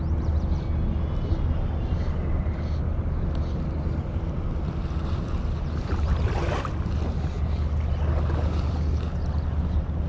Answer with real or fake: real